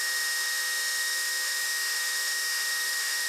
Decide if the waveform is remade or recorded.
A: remade